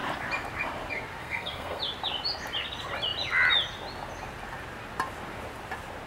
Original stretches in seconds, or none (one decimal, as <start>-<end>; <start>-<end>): 0.0-1.2; 1.8-6.1